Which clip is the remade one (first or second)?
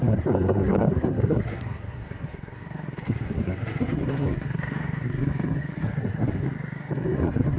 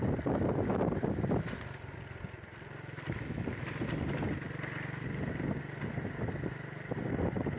first